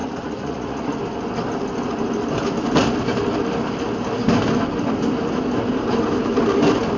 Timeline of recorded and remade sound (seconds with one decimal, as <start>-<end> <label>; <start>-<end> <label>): 0.0-1.0 remade; 1.0-7.0 recorded